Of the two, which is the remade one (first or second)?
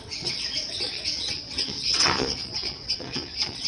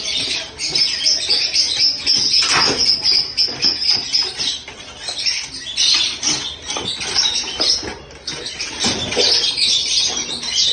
first